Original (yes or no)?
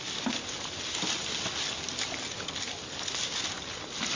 yes